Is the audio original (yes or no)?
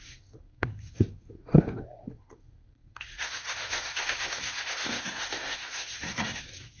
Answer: no